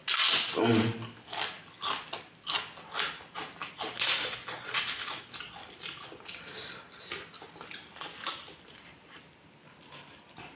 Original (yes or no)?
yes